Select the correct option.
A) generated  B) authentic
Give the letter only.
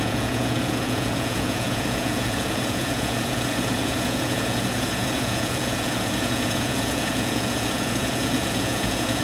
A